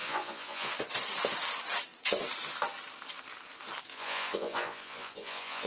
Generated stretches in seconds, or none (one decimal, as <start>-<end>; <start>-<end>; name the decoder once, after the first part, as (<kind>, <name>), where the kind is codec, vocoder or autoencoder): 0.0-0.7 (vocoder, Vocos); 3.9-5.7